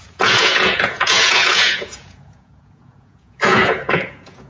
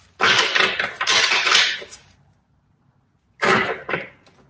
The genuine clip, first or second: second